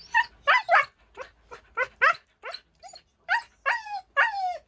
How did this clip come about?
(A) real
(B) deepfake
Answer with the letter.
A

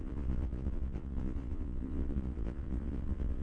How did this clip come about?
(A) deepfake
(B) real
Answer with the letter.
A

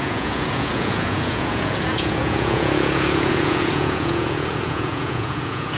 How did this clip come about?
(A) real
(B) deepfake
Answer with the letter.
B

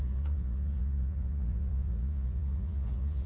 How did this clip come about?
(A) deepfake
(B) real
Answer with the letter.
A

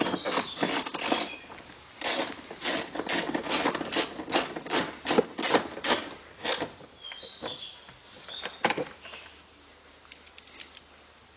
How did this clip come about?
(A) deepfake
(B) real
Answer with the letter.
B